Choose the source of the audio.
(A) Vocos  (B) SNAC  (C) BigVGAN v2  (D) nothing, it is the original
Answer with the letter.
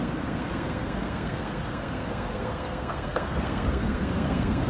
B